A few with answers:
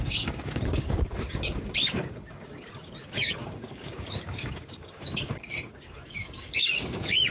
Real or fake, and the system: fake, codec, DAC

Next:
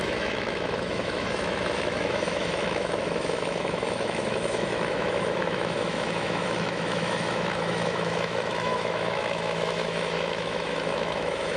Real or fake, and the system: fake, autoencoder, DAC-VAE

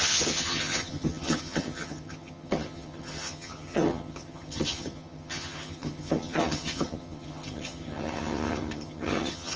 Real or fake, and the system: fake, vocoder, HiFi-GAN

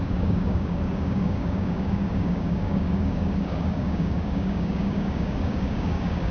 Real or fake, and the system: fake, codec, DAC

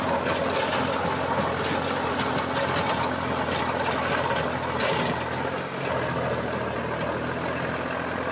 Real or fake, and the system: real